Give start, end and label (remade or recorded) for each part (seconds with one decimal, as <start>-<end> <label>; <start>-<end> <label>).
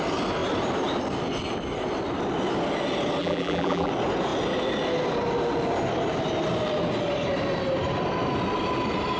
0.0-3.2 recorded; 3.2-3.9 remade; 3.9-9.2 recorded